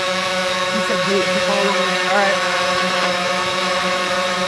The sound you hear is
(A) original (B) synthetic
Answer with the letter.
B